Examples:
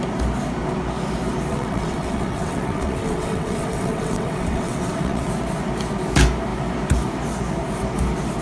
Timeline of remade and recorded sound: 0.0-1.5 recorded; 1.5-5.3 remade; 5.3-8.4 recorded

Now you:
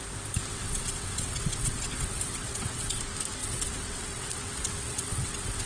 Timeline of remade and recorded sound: 0.0-0.5 recorded; 0.5-3.0 remade; 3.0-3.4 recorded; 3.4-5.7 remade

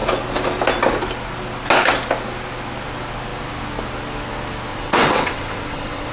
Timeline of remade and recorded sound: 0.0-4.7 recorded; 4.7-6.1 remade

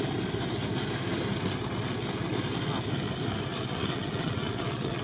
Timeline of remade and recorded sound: 0.0-3.5 recorded; 3.5-5.0 remade

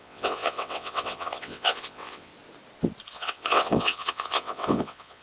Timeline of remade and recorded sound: 0.0-2.3 remade; 2.3-3.1 recorded; 3.1-5.2 remade

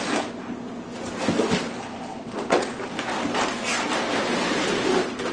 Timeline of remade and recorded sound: 0.0-2.1 recorded; 2.1-2.8 remade; 2.8-5.3 recorded

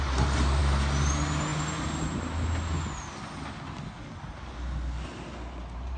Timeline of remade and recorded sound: 0.0-6.0 recorded